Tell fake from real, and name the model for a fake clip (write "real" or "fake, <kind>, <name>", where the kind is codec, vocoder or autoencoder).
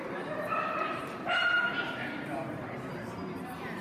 fake, vocoder, BigVGAN v2